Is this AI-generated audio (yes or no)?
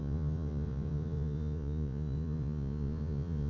yes